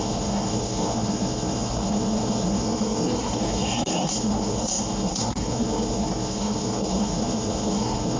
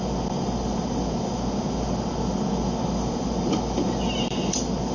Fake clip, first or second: first